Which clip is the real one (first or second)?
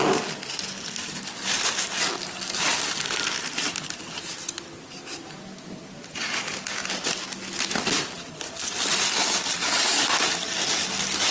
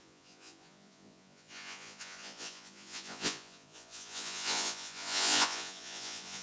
first